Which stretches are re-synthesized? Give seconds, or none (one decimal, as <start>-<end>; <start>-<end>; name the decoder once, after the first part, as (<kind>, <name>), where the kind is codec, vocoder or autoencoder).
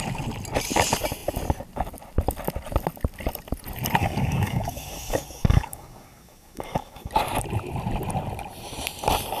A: 4.0-7.1 (codec, DAC)